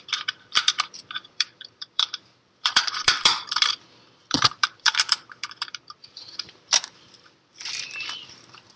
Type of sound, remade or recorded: remade